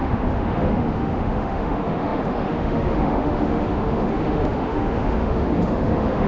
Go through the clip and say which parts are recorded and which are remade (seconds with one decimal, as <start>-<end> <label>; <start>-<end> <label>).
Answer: 0.0-6.3 remade